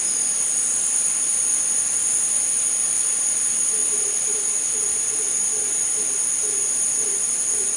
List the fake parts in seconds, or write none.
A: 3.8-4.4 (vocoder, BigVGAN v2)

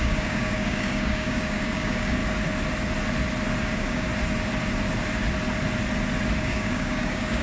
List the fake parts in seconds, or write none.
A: 0.0-2.2 (codec, DAC); 3.6-4.1; 6.4-7.4

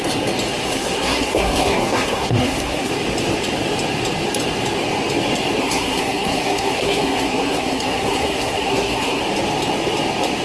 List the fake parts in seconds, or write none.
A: 0.6-2.9 (codec, SNAC); 5.6-9.2

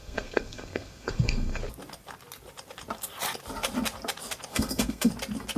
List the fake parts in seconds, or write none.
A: 0.0-1.6 (codec, SNAC); 4.5-5.1

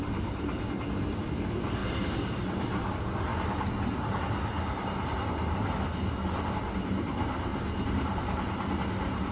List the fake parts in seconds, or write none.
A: 1.8-2.4 (vocoder, BigVGAN v2); 7.5-9.3

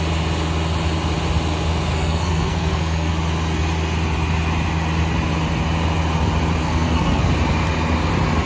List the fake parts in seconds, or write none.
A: 1.9-3.1 (codec, SNAC); 6.6-7.3